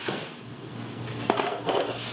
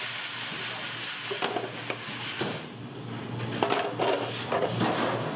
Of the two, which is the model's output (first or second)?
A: first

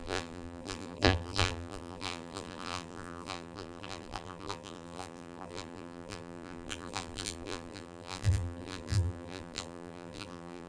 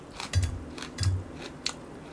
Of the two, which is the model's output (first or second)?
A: first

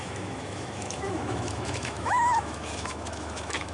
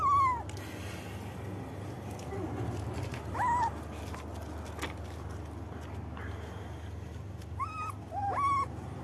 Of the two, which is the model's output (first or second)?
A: first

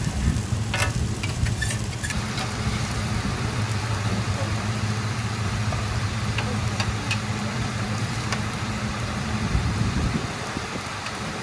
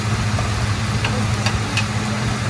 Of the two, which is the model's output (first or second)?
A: first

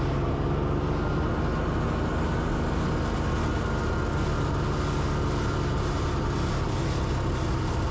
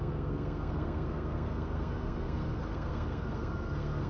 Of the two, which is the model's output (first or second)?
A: second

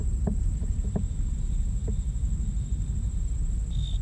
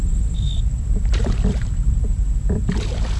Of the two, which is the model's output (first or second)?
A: second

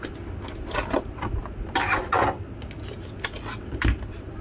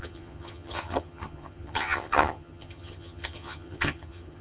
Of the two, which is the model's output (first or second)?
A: second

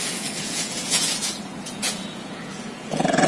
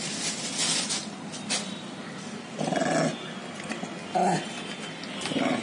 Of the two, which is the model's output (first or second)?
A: first